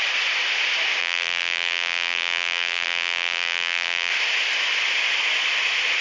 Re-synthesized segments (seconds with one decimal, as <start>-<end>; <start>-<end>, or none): 1.0-4.1

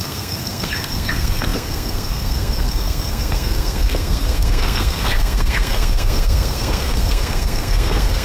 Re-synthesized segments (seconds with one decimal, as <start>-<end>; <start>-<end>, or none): 0.0-8.2

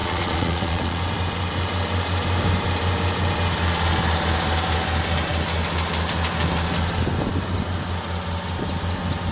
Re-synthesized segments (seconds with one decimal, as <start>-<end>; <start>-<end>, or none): 0.0-1.0

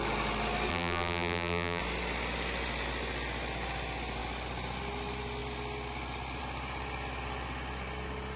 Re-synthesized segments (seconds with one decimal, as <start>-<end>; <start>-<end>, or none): 0.7-1.8

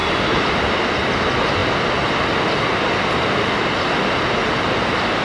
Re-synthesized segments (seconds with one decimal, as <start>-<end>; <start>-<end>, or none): none